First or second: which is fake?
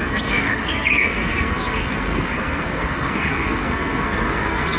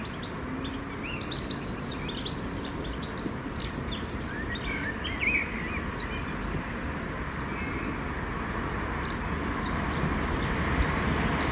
first